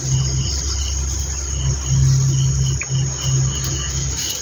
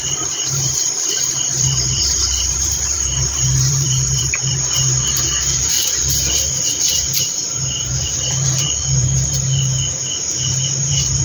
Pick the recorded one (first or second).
first